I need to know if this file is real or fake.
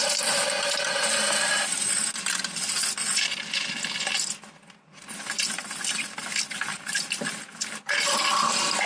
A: real